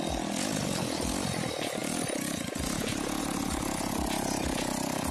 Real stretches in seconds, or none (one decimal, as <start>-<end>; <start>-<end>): 0.0-5.1